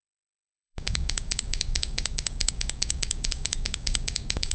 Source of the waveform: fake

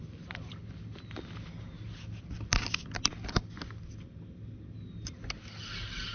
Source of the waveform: real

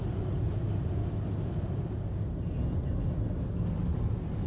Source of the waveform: real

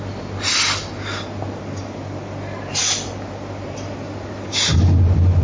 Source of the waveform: real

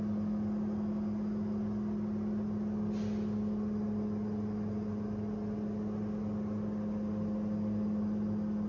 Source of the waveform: real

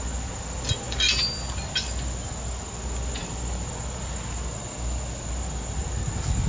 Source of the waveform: real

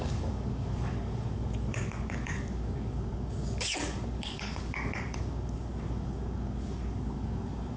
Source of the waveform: fake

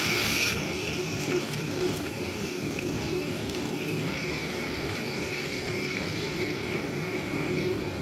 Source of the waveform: fake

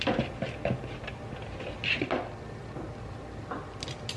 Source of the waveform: real